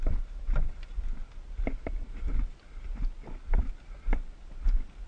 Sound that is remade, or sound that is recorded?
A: recorded